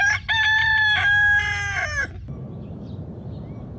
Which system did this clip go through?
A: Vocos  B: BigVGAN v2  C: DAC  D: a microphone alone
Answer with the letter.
D